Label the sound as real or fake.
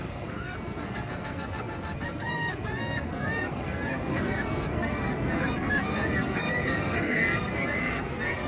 fake